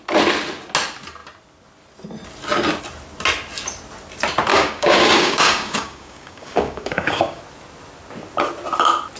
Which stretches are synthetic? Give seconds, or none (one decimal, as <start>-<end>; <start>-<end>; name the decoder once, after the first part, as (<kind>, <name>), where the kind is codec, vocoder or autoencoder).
4.5-7.4 (codec, DAC)

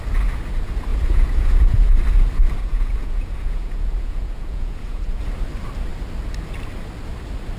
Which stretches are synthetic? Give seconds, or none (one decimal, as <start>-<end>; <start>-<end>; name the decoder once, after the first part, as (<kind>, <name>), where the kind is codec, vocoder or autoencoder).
0.9-2.0 (vocoder, Vocos); 2.6-5.2

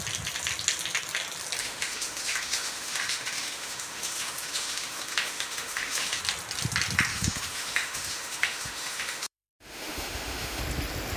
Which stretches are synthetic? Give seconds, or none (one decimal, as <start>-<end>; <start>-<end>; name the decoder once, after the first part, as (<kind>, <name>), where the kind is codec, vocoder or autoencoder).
1.6-6.2 (autoencoder, DAC-VAE); 7.1-10.6

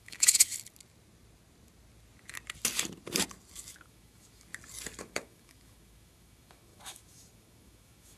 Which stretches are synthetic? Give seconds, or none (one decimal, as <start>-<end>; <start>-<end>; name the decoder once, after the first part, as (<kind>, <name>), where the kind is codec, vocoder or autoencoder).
0.0-0.5 (autoencoder, DAC-VAE); 3.7-4.5; 5.0-8.2